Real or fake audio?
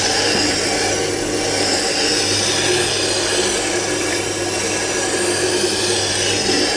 real